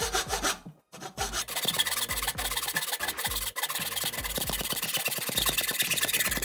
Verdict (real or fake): real